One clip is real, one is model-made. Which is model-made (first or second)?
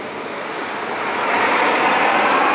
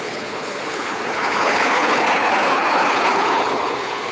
second